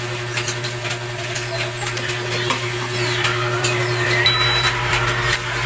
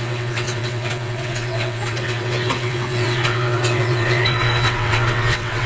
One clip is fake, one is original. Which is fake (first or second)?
second